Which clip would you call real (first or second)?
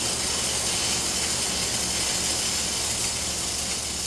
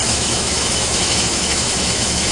first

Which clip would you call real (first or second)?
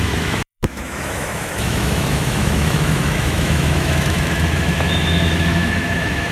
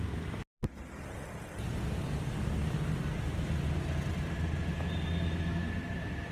second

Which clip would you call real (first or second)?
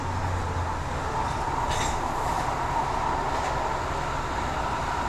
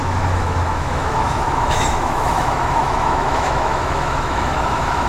first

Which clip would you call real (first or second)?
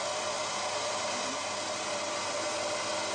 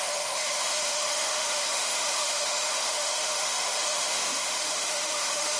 first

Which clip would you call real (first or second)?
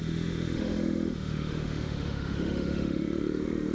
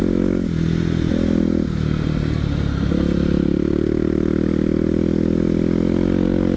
second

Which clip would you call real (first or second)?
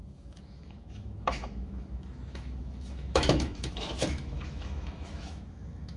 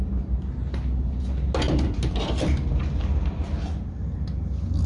second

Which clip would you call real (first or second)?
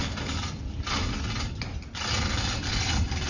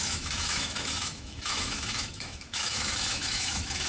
first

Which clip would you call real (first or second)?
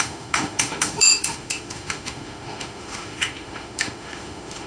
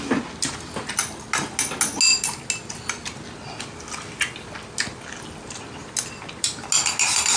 second